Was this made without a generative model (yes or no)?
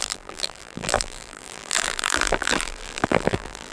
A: no